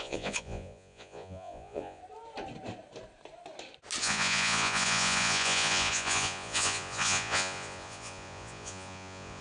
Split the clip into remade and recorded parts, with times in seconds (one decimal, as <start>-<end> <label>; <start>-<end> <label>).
0.0-2.0 remade; 2.0-4.0 recorded; 4.0-9.4 remade